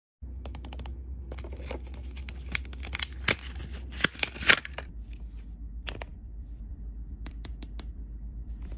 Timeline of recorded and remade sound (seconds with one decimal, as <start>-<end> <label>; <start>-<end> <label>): 0.0-6.1 recorded; 6.1-8.8 remade